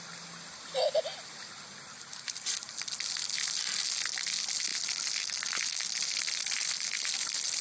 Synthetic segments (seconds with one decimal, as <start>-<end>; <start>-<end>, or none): none